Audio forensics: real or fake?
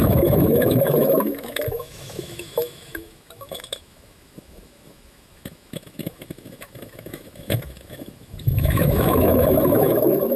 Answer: fake